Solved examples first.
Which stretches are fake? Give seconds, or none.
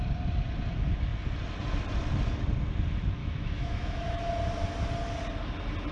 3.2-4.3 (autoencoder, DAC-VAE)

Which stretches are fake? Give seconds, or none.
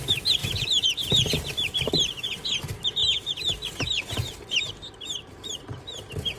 0.4-1.9 (vocoder, BigVGAN v2)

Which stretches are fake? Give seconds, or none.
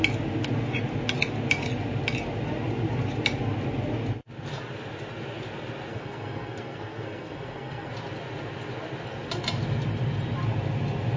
5.9-7.9 (codec, SNAC)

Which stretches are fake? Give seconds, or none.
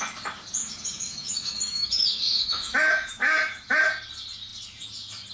0.6-3.8 (autoencoder, DAC-VAE)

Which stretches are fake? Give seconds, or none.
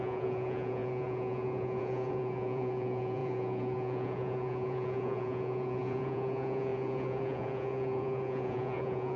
0.0-9.2 (vocoder, Vocos)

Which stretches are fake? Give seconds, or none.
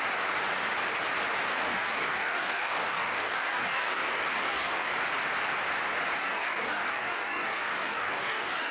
1.5-4.9 (codec, DAC); 6.2-8.7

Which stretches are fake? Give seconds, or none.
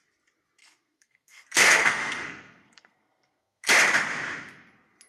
0.6-3.7 (codec, SNAC)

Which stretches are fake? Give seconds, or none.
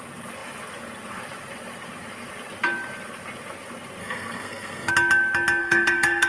4.0-4.9 (codec, SNAC); 5.6-6.3